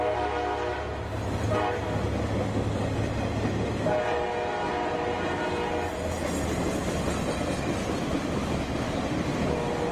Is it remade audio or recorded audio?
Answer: recorded